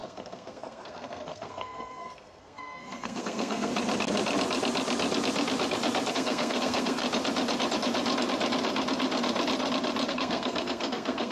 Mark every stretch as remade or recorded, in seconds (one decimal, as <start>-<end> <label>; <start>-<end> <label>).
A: 0.0-3.7 remade; 3.7-6.1 recorded; 6.1-7.0 remade; 7.0-10.1 recorded; 10.1-11.3 remade